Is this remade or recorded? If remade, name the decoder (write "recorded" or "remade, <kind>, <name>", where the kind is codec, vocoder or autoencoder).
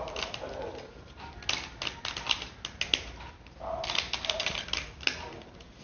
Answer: recorded